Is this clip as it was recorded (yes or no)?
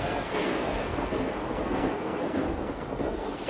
no